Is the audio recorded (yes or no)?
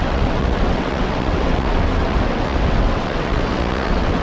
no